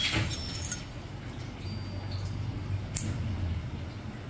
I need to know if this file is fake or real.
real